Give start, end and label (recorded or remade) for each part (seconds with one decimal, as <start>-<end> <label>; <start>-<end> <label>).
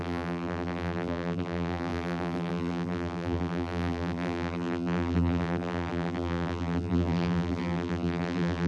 0.0-8.7 remade